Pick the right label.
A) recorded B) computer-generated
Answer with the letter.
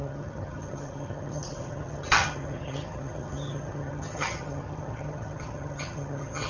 B